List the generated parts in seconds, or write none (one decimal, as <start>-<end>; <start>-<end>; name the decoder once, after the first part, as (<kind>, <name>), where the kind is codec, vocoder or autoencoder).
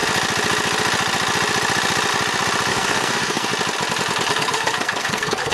2.7-3.5 (codec, SNAC); 4.3-5.5